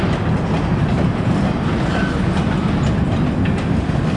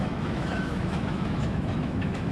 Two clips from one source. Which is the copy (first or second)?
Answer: second